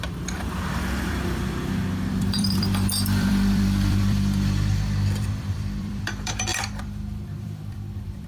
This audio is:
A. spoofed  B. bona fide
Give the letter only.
A